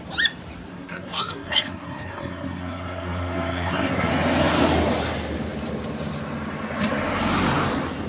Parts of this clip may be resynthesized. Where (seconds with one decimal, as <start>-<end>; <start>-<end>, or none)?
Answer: 0.7-4.1